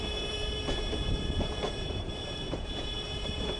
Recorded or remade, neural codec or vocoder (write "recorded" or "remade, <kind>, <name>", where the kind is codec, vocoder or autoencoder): remade, vocoder, Vocos